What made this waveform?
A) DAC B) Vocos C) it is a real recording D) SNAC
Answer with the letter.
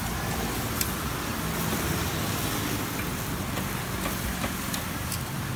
C